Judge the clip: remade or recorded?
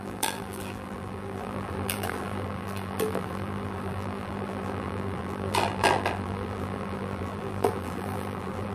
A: remade